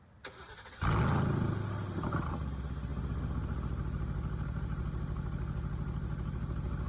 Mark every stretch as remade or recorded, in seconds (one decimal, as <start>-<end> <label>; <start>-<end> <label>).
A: 0.0-6.9 recorded